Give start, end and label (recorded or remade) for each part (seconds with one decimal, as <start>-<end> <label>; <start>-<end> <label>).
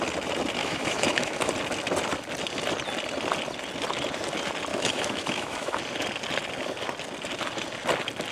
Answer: 0.0-0.6 recorded; 0.6-1.5 remade; 1.5-4.7 recorded; 4.7-5.8 remade; 5.8-8.3 recorded